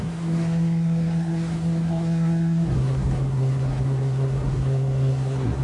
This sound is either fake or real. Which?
fake